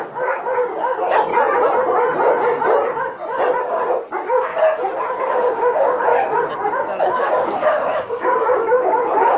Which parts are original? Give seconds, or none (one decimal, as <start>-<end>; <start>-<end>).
1.3-3.6; 4.5-5.2; 6.1-7.0